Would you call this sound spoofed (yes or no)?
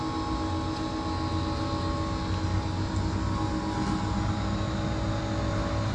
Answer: no